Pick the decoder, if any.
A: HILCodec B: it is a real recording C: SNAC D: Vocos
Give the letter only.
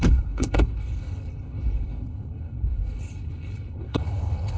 A